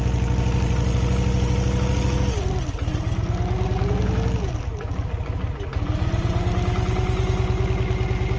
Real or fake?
real